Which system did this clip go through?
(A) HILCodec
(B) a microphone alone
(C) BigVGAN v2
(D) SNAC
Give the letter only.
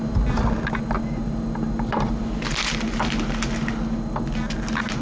B